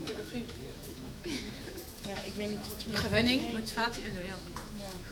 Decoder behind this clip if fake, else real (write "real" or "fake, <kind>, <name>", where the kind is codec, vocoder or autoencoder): fake, autoencoder, DAC-VAE